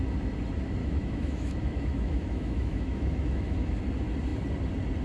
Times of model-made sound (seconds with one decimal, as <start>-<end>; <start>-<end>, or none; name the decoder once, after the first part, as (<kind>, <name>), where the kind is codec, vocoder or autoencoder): 0.8-3.8 (autoencoder, DAC-VAE)